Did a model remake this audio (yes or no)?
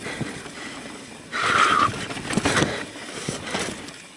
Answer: yes